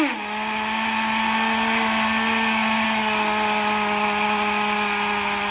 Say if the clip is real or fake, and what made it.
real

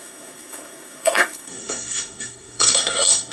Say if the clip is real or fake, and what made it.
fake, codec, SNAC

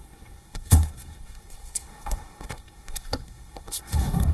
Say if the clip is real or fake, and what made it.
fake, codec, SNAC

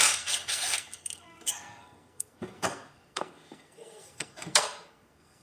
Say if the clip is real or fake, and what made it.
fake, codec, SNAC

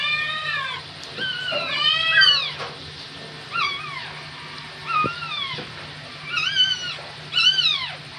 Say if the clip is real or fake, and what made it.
real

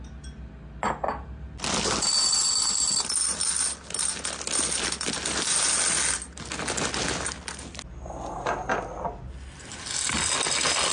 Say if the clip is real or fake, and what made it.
real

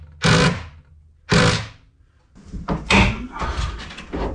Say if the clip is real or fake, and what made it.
real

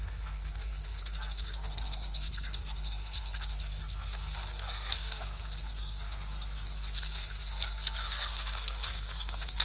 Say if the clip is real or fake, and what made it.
fake, codec, SNAC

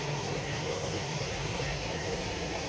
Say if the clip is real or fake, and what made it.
fake, codec, SNAC